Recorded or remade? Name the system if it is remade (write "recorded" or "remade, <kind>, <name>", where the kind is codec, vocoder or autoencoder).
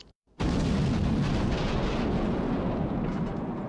recorded